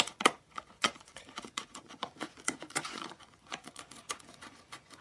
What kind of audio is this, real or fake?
fake